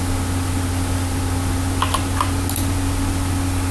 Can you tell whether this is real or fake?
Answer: real